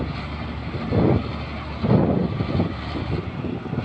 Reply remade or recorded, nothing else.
recorded